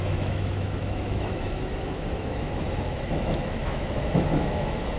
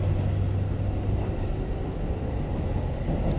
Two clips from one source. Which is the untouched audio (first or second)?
second